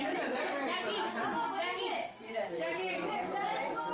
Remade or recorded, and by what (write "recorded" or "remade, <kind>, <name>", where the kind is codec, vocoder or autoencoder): remade, vocoder, BigVGAN v2